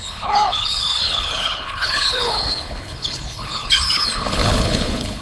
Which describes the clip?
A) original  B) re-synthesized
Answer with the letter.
B